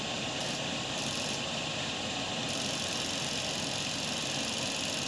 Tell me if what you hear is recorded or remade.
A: recorded